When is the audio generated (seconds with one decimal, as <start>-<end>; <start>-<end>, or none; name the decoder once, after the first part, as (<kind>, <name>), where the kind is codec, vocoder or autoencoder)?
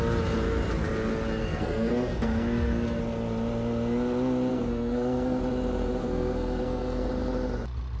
1.4-3.0 (codec, SNAC); 4.5-5.4; 6.0-7.1